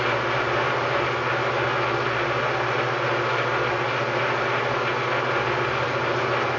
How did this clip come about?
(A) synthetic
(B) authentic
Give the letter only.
B